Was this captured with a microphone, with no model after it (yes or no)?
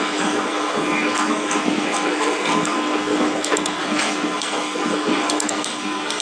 no